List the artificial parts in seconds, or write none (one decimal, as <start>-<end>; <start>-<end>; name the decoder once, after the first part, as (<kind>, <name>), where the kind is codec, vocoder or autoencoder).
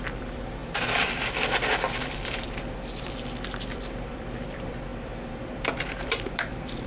0.0-6.9 (vocoder, BigVGAN v2)